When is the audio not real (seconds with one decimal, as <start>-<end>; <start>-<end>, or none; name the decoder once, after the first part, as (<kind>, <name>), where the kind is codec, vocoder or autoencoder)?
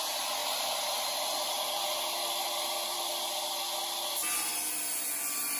0.4-3.2 (vocoder, BigVGAN v2)